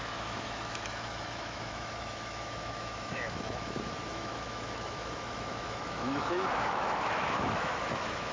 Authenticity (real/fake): fake